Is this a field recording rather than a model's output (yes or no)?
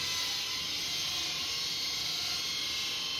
yes